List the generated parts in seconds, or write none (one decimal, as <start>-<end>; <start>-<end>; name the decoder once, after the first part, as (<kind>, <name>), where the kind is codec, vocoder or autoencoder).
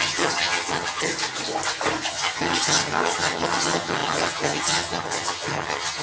0.0-1.1 (vocoder, HiFi-GAN); 2.1-6.0